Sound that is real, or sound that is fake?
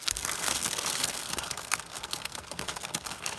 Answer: fake